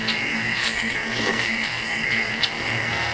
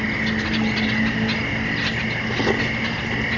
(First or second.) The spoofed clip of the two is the first